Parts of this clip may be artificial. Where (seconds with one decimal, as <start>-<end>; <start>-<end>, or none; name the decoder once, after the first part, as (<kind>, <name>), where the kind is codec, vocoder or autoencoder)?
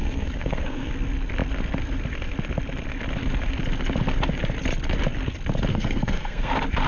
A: 0.0-0.9 (codec, SNAC); 5.7-6.5